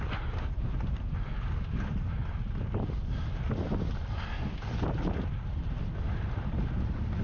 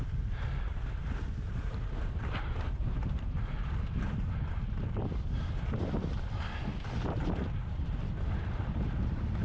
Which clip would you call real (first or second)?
first